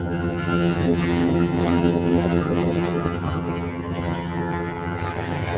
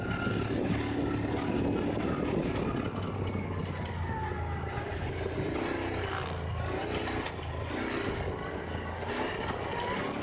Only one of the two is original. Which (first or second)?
second